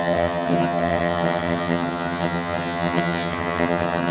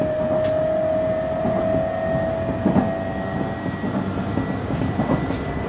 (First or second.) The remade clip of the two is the first